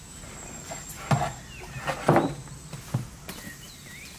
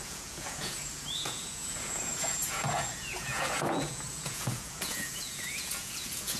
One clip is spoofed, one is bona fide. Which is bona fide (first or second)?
first